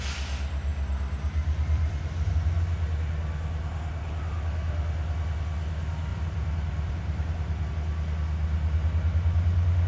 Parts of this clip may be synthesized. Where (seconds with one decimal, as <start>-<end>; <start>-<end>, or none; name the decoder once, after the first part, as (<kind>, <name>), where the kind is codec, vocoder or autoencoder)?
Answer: 0.7-2.3 (vocoder, BigVGAN v2); 6.1-7.7